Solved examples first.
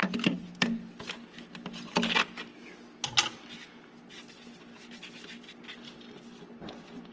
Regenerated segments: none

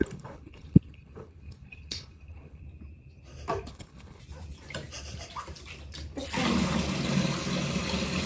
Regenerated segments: 0.0-2.6 (codec, HILCodec); 3.7-4.2

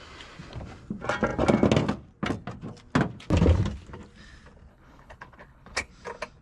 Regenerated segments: 4.7-5.9 (codec, HILCodec)

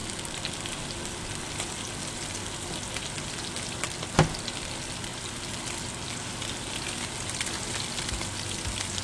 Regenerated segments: none

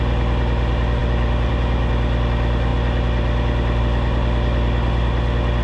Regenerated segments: none

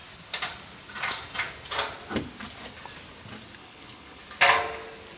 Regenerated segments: 3.6-4.2 (codec, HILCodec)